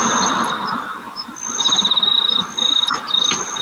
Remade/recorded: recorded